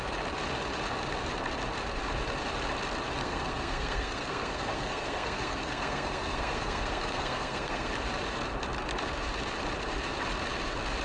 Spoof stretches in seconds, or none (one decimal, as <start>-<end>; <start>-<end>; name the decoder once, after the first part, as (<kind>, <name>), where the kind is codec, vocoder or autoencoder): 3.2-7.9 (codec, SNAC)

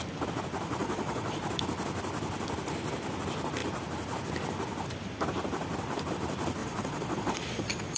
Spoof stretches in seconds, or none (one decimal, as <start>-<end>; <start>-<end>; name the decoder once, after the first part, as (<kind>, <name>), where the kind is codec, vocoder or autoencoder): 0.8-1.4 (vocoder, Vocos); 6.6-8.0

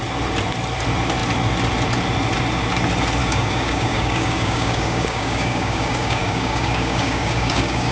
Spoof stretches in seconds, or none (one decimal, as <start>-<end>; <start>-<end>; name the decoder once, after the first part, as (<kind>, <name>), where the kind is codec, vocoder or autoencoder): 3.2-7.9 (codec, DAC)

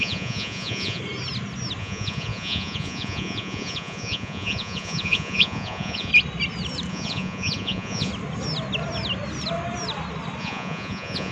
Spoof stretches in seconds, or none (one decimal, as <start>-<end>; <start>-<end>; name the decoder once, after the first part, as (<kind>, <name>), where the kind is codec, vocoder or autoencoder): 0.0-1.0 (vocoder, Vocos); 1.8-6.1; 6.9-8.1; 10.4-11.3

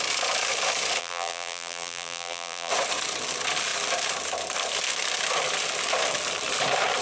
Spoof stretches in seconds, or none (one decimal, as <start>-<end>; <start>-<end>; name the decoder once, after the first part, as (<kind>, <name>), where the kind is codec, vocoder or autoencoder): 1.0-2.7 (vocoder, BigVGAN v2)

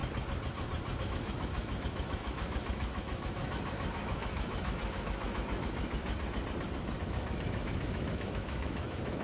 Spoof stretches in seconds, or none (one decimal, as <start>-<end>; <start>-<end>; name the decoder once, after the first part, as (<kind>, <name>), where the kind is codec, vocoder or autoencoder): 1.0-3.4 (autoencoder, DAC-VAE); 4.0-6.0; 7.0-9.2

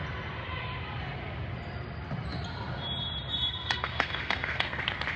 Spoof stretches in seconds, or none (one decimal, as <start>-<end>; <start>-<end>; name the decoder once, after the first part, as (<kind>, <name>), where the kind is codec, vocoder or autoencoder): 3.5-4.8 (codec, SNAC)

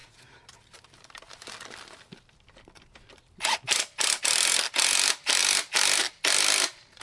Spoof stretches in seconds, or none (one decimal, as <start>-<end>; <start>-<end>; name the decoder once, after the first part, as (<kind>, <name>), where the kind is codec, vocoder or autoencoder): 0.0-4.2 (vocoder, BigVGAN v2); 5.4-6.2